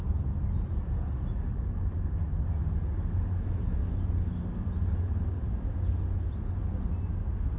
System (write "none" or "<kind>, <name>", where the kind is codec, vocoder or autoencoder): none